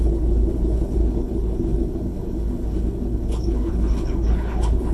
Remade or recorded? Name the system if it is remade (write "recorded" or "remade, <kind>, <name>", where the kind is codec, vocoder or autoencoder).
remade, codec, HILCodec